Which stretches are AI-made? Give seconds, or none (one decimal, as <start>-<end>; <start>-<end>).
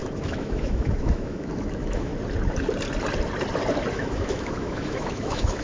0.0-2.1; 3.9-5.6